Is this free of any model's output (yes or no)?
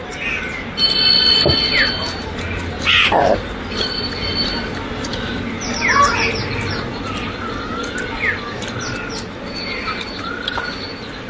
yes